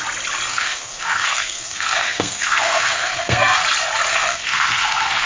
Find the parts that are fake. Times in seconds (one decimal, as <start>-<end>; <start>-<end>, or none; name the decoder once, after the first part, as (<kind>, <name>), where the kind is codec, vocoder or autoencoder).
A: 0.5-3.6 (codec, SNAC); 4.1-5.3